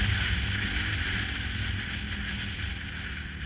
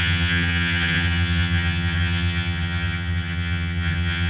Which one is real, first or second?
first